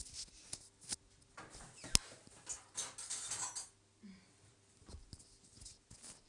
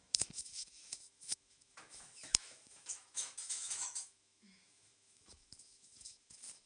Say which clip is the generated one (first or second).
second